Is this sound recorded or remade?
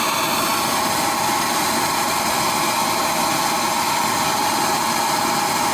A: recorded